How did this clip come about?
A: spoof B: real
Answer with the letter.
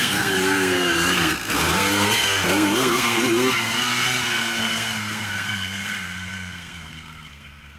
A